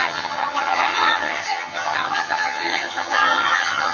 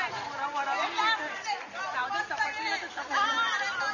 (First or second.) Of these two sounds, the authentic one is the second